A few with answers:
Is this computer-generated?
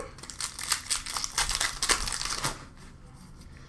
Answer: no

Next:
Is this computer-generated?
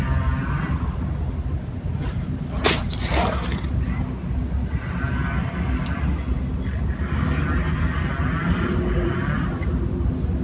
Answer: no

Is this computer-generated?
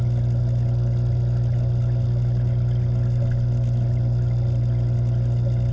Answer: no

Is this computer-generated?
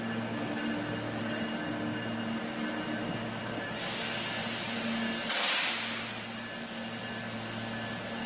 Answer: no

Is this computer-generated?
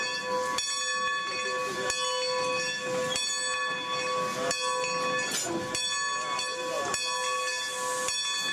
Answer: no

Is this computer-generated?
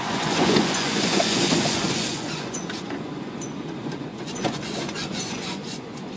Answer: yes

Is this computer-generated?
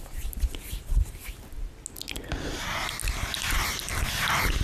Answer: no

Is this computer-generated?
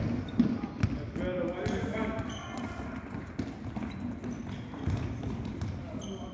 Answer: no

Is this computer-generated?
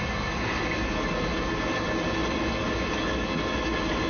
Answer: no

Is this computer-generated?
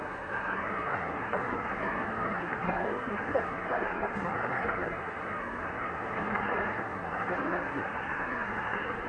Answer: yes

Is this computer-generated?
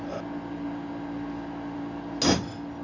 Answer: no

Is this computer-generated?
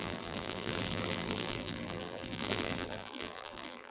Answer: yes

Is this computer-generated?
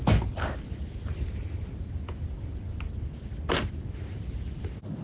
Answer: no